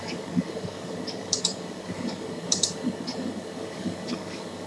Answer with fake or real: fake